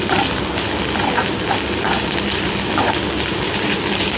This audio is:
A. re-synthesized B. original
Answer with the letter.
B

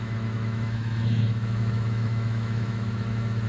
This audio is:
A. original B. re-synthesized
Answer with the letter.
B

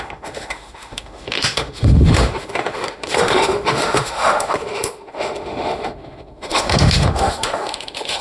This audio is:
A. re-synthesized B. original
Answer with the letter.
A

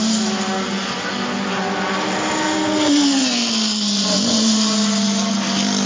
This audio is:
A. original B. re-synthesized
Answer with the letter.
A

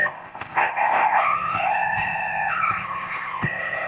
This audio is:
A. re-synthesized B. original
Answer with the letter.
A